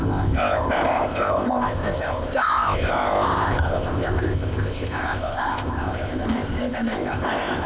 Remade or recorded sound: remade